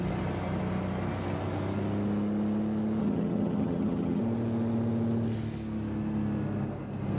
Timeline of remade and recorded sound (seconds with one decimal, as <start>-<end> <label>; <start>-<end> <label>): 0.0-3.0 recorded; 3.0-4.2 remade; 4.2-7.2 recorded